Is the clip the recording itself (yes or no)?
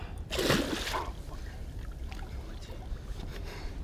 yes